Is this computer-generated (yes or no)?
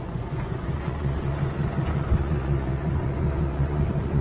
yes